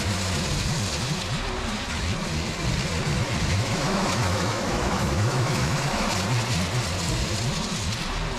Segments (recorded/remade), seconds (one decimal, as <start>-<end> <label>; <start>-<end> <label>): 0.0-3.5 recorded; 3.5-6.1 remade; 6.1-8.4 recorded